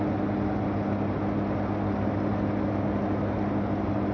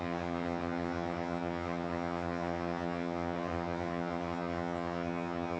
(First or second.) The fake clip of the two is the second